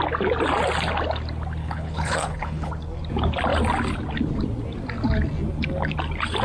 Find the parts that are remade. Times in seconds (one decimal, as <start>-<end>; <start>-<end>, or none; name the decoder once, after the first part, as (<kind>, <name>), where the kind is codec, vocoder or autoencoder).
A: 1.6-2.7 (codec, HILCodec)